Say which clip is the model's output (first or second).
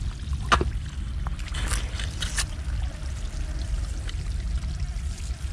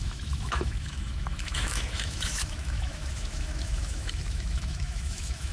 second